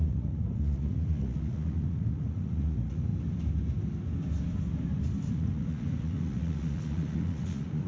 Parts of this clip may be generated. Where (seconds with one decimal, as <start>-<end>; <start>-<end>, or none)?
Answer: 0.0-3.1; 5.3-7.9